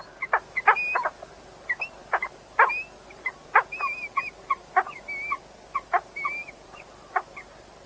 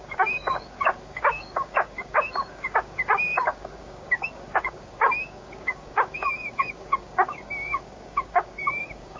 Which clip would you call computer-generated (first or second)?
second